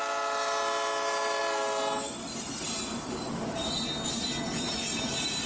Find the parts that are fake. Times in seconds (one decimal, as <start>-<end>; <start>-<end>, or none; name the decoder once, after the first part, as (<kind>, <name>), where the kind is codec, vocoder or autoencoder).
none